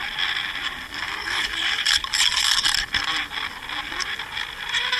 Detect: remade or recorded recorded